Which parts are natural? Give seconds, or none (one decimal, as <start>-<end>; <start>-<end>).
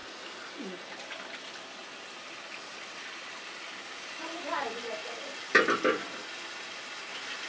0.0-7.5